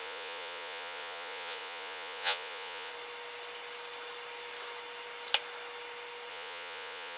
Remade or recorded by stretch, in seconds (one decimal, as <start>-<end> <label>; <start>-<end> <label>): 0.0-2.9 remade; 2.9-6.3 recorded; 6.3-7.2 remade

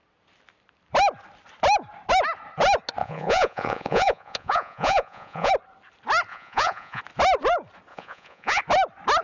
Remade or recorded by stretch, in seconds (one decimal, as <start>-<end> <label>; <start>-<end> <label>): 0.0-3.0 recorded; 3.0-5.5 remade; 5.5-6.3 recorded; 6.3-7.0 remade; 7.0-7.9 recorded; 7.9-8.6 remade; 8.6-9.2 recorded

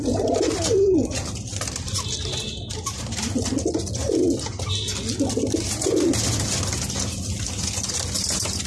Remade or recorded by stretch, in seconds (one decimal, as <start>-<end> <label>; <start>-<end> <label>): 0.0-8.7 recorded

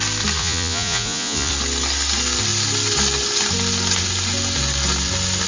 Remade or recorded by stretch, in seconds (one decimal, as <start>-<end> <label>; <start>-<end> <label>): 0.0-0.4 recorded; 0.4-1.5 remade; 1.5-5.5 recorded

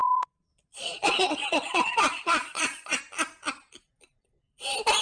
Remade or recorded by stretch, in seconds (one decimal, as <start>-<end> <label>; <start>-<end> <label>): 0.0-3.0 remade; 3.0-5.0 recorded

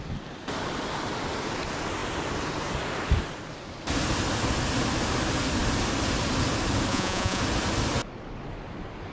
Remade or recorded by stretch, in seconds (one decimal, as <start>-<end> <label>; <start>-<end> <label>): 0.0-6.9 recorded; 6.9-7.4 remade; 7.4-9.1 recorded

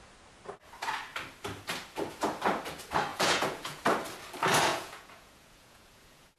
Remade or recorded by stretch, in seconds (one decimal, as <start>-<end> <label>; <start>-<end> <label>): 0.0-3.1 recorded; 3.1-3.8 remade; 3.8-4.7 recorded; 4.7-6.4 remade